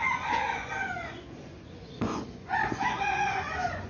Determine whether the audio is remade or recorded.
remade